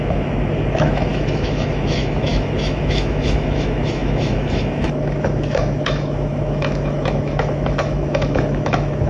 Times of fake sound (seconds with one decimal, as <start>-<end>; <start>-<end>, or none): 0.0-9.1